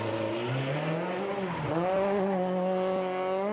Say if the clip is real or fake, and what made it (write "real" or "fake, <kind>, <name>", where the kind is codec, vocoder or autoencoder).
real